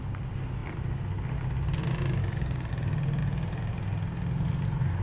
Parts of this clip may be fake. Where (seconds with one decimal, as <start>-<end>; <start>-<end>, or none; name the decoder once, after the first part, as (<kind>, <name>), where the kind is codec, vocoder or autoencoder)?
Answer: 2.2-2.7 (codec, DAC)